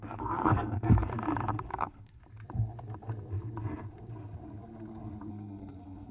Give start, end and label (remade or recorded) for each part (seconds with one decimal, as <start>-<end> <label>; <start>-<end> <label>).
0.0-1.1 remade; 1.1-1.7 recorded; 1.7-2.2 remade; 2.2-5.3 recorded; 5.3-6.1 remade